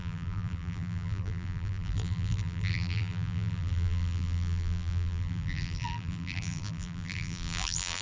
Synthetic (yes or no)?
yes